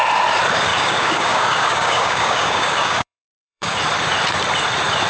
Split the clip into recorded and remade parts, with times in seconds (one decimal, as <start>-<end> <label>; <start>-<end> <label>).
0.0-0.7 recorded; 0.7-3.8 remade; 3.8-5.1 recorded